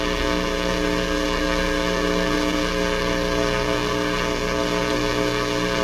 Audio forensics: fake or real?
fake